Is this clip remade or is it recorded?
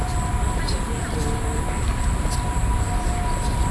recorded